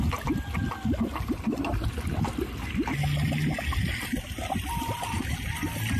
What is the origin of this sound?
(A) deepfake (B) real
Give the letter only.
B